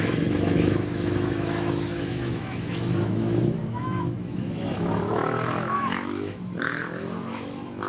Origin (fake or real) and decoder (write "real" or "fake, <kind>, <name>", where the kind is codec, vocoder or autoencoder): fake, autoencoder, DAC-VAE